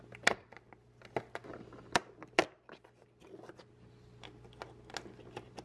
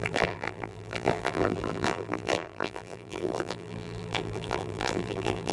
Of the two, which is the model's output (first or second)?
second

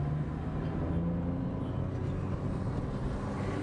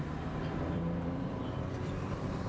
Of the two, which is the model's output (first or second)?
second